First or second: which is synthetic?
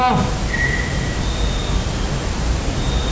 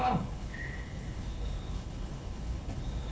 second